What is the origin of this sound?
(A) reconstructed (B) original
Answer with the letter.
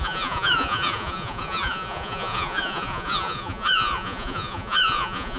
A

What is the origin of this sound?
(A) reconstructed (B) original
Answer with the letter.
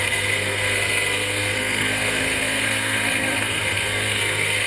A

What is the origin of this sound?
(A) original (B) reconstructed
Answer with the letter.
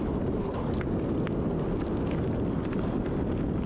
A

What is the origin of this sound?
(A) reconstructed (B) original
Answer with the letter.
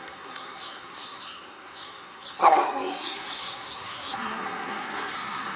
A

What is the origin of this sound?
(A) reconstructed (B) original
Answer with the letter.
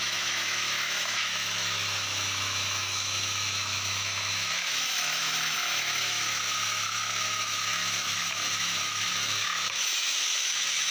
A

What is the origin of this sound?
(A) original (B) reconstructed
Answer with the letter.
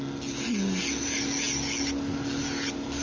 A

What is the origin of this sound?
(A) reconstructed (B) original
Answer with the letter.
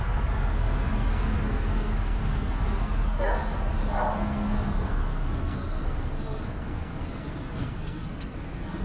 A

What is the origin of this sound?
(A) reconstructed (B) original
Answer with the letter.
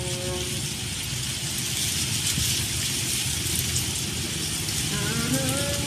B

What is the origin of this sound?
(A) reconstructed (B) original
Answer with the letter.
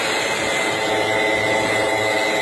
B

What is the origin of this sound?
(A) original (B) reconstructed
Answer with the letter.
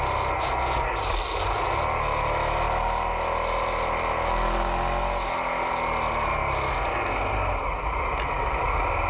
A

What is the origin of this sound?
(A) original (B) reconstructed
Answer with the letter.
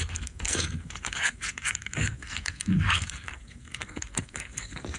B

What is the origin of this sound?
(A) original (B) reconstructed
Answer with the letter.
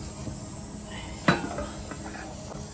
A